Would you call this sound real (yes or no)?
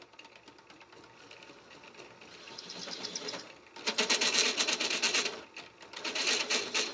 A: yes